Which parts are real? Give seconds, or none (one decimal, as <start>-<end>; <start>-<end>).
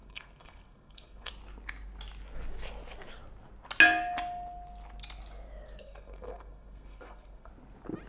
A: 1.3-5.8; 7.5-8.1